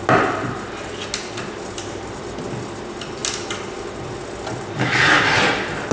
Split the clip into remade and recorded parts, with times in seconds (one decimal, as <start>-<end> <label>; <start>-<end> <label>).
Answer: 0.0-5.9 recorded